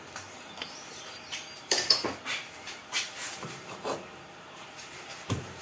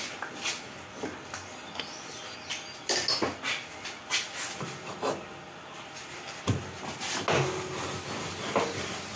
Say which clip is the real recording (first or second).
second